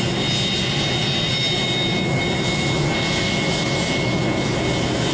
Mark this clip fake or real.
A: real